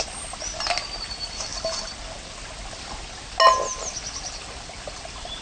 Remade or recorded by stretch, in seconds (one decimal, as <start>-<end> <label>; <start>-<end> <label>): 0.0-1.5 recorded; 1.5-2.3 remade; 2.3-3.7 recorded; 3.7-5.4 remade